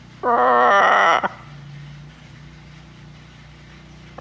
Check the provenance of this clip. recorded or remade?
recorded